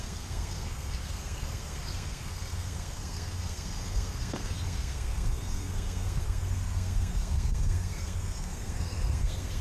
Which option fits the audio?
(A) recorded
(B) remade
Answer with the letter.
B